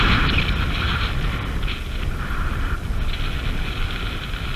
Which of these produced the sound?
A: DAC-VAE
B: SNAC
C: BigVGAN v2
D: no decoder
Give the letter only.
D